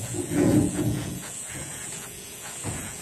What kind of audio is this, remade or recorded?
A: remade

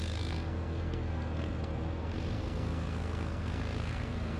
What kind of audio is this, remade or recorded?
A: remade